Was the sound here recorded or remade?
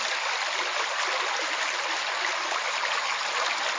recorded